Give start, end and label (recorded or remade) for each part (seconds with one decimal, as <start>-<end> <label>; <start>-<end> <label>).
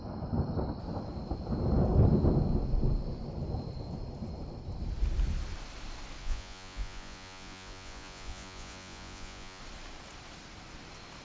0.0-6.2 recorded; 6.2-9.6 remade; 9.6-11.2 recorded